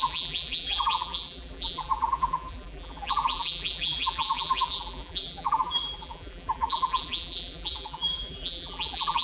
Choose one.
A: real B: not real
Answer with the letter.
B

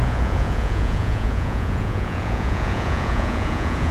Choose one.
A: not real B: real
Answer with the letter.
A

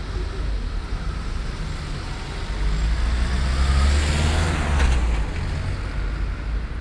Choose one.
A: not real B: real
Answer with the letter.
B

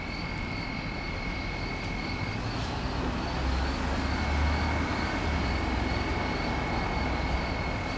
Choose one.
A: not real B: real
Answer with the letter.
B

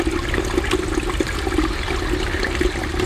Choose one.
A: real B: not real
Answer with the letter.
A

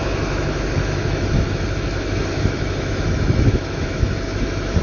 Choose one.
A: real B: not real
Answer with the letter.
B